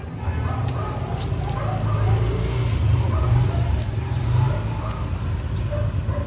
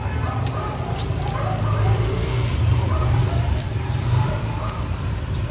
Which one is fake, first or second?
second